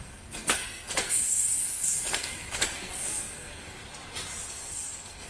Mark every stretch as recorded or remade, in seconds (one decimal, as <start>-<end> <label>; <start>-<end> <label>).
0.0-3.8 remade; 3.8-4.5 recorded; 4.5-5.3 remade